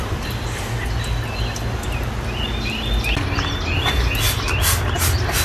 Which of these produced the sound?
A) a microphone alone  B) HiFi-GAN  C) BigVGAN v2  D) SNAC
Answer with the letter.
A